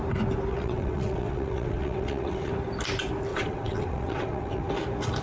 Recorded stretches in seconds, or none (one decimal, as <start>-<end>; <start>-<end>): 0.0-0.5; 2.5-3.3; 4.7-5.2